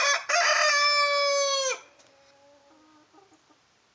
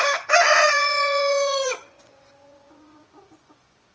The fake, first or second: second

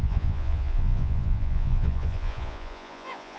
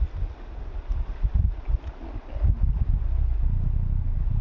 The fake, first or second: first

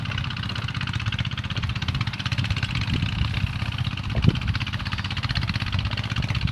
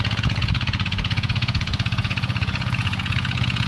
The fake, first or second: second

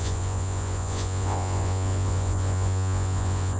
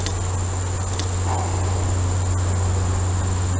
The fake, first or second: first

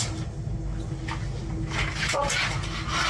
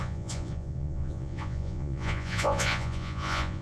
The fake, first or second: second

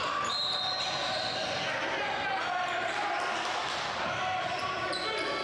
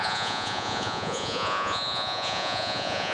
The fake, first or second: second